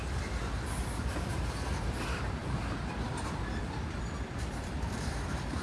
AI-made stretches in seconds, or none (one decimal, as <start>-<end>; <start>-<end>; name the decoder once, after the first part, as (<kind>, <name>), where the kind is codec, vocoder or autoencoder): 0.8-5.6 (vocoder, BigVGAN v2)